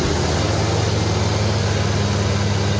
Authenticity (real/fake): real